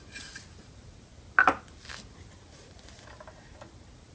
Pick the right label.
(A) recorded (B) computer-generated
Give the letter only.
A